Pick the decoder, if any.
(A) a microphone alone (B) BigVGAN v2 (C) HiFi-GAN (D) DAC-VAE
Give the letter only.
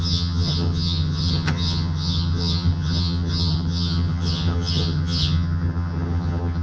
C